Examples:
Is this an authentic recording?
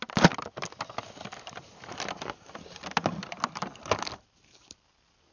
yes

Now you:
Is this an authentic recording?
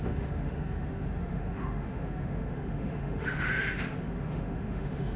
no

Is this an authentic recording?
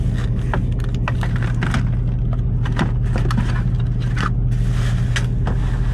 yes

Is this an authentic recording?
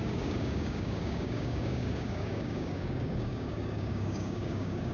no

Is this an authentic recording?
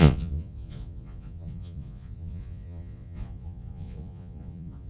no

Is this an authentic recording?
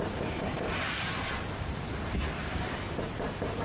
no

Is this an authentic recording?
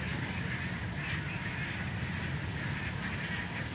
yes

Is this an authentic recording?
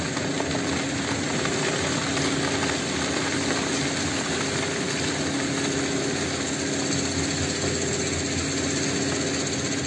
yes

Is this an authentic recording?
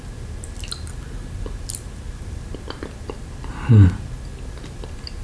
yes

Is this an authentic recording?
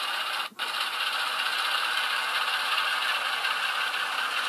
yes